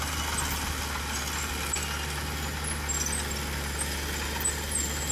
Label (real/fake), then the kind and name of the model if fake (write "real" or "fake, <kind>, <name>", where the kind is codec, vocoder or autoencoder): real